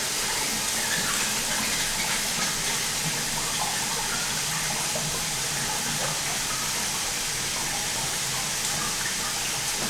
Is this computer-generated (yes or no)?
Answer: no